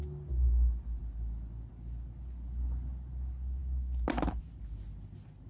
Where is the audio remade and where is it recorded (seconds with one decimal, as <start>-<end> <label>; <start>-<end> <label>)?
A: 0.0-5.5 recorded